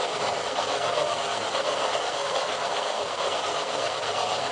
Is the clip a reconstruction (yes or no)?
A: yes